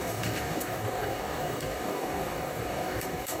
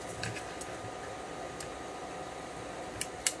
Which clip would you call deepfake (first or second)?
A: first